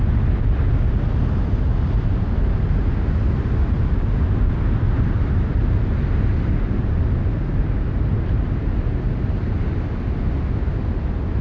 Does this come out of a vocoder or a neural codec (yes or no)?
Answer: no